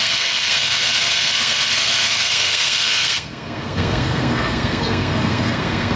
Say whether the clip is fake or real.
fake